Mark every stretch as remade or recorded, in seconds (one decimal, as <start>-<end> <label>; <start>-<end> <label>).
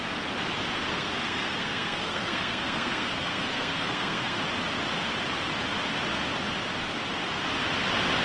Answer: 0.0-0.9 recorded; 0.9-4.4 remade; 4.4-8.2 recorded